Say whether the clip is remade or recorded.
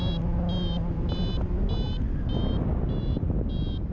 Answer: recorded